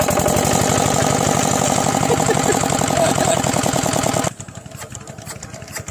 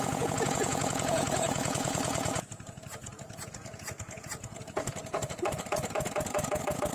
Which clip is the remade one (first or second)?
second